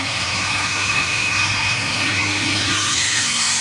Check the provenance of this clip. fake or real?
fake